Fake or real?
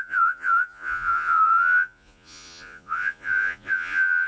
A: fake